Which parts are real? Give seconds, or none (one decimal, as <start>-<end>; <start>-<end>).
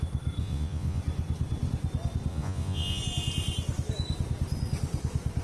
0.0-0.4; 1.0-2.3; 3.0-5.4